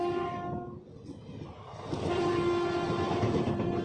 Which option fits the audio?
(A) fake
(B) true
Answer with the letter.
B